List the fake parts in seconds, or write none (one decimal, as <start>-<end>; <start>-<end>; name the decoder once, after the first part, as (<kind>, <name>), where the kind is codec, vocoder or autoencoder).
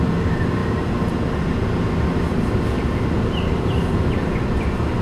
none